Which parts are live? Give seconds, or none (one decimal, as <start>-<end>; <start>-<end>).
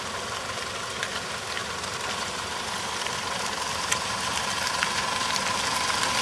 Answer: 0.0-1.6; 2.7-3.7; 4.8-6.2